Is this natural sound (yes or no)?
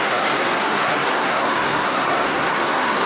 no